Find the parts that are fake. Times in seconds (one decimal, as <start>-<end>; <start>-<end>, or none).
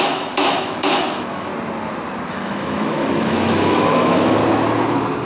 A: 0.0-1.5; 2.3-4.4